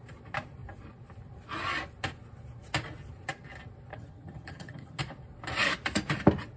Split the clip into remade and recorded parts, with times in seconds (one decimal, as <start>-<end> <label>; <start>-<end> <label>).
0.0-3.9 recorded; 3.9-5.0 remade; 5.0-6.6 recorded